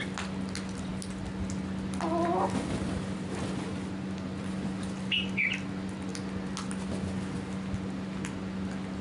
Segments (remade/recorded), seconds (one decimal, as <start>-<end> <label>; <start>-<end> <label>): 0.0-9.0 recorded